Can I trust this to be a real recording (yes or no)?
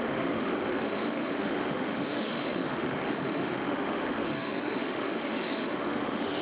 no